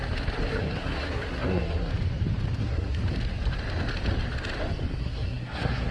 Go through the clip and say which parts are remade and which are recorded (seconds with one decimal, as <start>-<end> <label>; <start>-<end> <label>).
0.0-0.6 recorded; 0.6-1.9 remade; 1.9-2.6 recorded; 2.6-3.0 remade; 3.0-5.0 recorded; 5.0-5.9 remade